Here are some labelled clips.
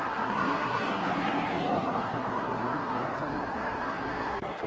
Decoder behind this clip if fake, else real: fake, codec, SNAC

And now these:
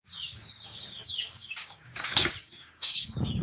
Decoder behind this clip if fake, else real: fake, codec, DAC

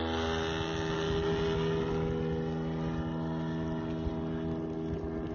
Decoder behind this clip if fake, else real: real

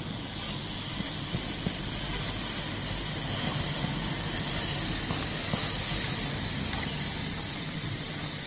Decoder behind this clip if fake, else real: real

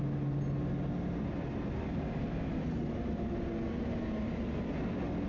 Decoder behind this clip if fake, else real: real